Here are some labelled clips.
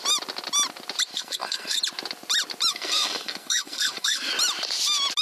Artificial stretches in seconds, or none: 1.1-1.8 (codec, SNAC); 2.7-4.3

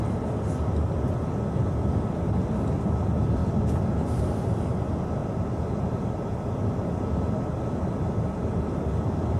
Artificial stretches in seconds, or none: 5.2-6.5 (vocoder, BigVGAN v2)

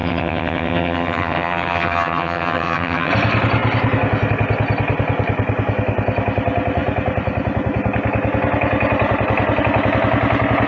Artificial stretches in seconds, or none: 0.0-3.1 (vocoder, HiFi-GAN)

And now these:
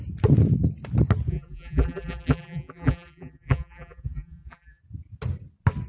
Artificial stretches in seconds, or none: 1.3-4.8 (vocoder, BigVGAN v2)

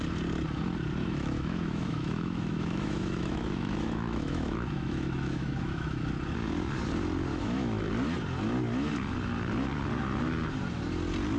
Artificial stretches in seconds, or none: 1.0-6.1 (autoencoder, DAC-VAE); 7.3-7.9